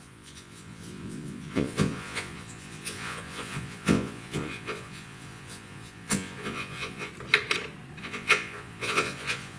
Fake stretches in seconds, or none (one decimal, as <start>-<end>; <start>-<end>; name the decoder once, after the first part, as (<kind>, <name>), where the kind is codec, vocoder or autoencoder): 0.0-7.1 (vocoder, Vocos); 8.0-9.6

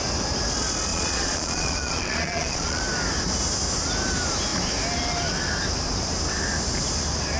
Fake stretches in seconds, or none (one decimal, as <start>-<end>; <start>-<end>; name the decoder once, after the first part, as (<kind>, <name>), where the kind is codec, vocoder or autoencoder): 0.9-2.8 (vocoder, Vocos)

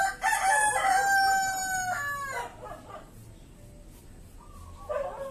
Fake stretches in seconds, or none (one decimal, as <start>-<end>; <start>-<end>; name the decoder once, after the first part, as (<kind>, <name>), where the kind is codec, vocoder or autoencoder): none

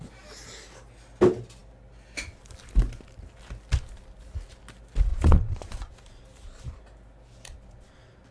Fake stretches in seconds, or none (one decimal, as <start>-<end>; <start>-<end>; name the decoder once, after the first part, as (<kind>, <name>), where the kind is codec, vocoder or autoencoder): 5.1-5.9 (vocoder, Vocos)

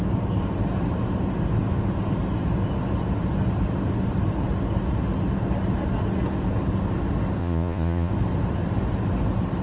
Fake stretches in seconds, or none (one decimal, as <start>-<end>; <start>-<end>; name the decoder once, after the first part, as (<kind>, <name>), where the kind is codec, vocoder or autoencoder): 7.4-8.1 (vocoder, Vocos)